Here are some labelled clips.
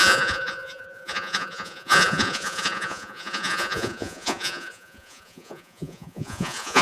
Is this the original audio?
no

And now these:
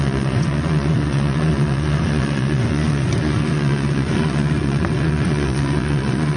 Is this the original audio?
no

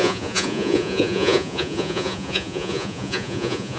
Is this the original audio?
no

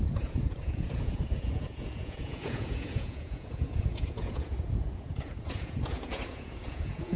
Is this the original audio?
no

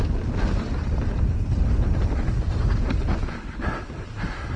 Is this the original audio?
yes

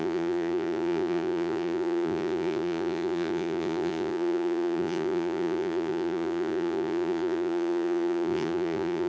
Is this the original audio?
no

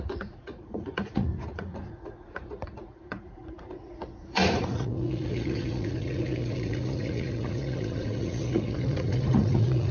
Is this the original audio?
no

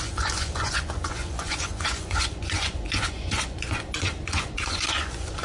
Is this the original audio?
no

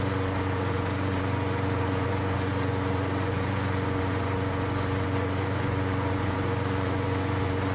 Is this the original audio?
no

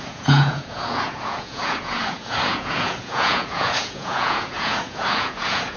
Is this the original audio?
no